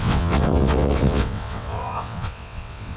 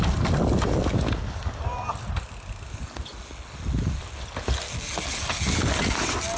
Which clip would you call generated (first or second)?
first